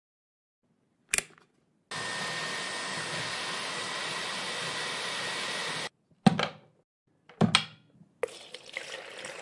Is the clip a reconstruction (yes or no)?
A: no